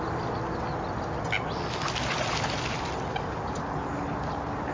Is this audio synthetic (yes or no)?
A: no